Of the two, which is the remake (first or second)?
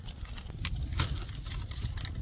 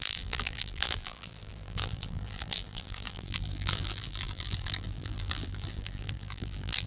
second